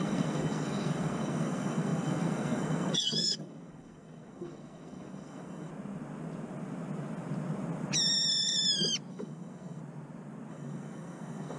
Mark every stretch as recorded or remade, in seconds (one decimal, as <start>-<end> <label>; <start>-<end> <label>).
0.0-5.7 remade; 5.7-9.1 recorded; 9.1-9.8 remade; 9.8-10.5 recorded; 10.5-11.6 remade